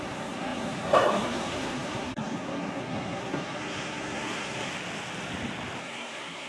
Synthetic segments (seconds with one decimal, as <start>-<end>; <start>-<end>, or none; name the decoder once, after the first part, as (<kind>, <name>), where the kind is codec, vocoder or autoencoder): 0.0-4.7 (codec, SNAC); 5.8-6.5